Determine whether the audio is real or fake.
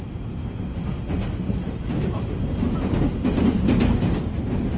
real